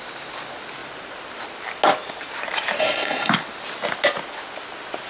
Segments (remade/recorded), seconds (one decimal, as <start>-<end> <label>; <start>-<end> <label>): 0.0-2.8 recorded; 2.8-3.3 remade; 3.3-5.1 recorded